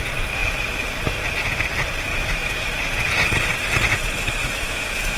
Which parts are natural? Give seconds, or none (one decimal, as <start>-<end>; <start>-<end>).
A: 0.0-2.1; 2.7-4.4